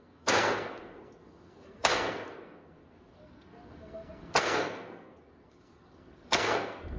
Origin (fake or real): fake